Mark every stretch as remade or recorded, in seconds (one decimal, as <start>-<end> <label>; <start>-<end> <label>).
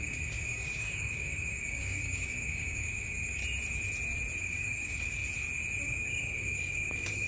0.0-3.4 remade; 3.4-4.4 recorded; 4.4-5.2 remade; 5.2-5.8 recorded; 5.8-7.3 remade